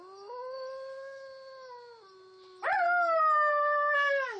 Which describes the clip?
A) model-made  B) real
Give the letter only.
B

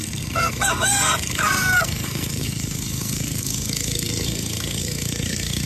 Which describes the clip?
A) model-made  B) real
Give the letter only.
A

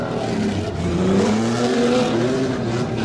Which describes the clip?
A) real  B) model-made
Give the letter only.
A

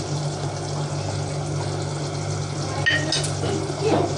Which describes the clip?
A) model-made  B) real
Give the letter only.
B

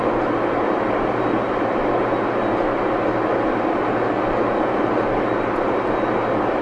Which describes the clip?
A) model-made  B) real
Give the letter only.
B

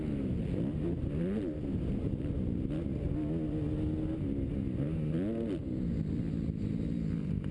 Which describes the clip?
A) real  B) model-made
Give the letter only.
A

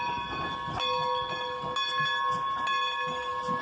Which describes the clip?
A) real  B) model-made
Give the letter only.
A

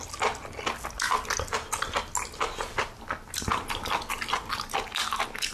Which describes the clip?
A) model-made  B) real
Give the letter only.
B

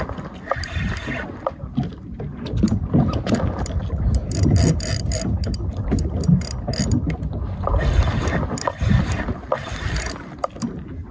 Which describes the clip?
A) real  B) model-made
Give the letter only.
A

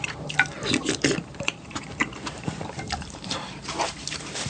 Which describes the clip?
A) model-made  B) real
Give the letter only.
A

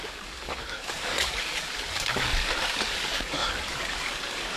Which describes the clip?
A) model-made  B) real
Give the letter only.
A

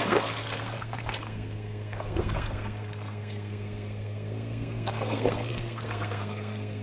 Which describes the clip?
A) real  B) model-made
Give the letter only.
B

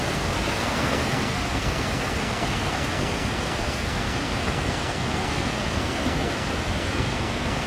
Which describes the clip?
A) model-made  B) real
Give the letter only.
A